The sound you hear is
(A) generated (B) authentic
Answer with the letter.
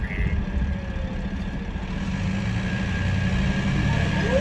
B